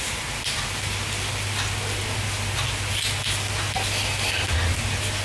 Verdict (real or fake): real